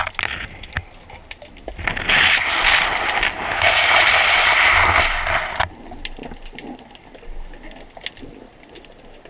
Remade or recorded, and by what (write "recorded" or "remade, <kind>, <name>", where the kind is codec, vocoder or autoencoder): recorded